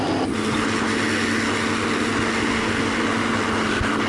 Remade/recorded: recorded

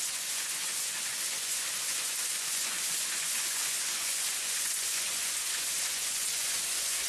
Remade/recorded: remade